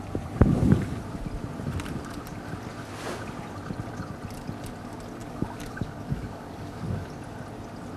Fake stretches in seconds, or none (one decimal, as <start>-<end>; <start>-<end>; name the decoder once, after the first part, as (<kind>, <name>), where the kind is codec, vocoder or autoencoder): 5.2-7.1 (codec, DAC)